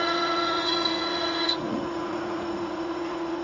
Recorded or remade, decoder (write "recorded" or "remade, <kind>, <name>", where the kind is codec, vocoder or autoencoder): remade, vocoder, Vocos